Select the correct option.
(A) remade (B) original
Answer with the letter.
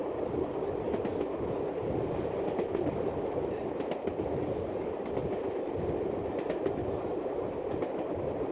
B